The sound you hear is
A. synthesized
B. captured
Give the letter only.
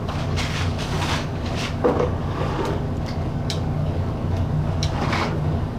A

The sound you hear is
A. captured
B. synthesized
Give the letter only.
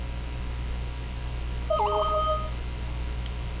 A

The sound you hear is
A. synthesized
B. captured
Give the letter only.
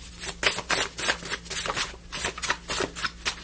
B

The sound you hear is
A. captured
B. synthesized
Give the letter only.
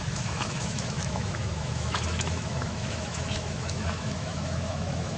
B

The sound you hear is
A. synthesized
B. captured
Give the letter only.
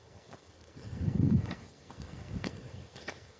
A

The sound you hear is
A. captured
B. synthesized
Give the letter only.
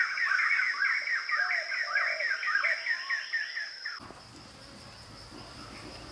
A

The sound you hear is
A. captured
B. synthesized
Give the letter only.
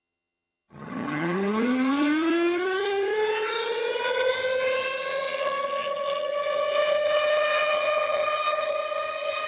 B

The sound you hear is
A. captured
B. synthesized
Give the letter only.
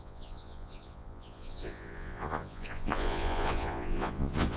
B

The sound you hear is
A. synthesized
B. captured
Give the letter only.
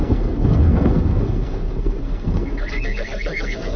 A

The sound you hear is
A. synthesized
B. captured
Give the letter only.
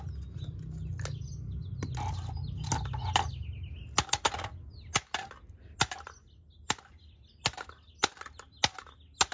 B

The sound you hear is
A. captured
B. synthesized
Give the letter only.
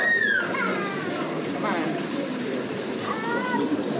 A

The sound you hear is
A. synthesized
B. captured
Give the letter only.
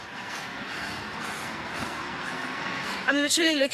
A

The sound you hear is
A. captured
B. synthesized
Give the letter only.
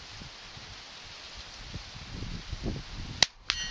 A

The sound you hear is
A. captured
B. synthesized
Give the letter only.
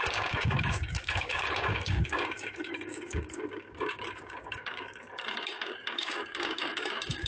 B